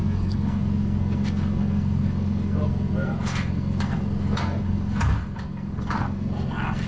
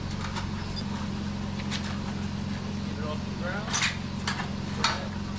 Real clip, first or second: second